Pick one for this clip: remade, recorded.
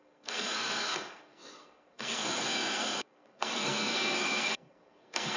remade